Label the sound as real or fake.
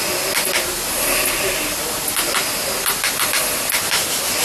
real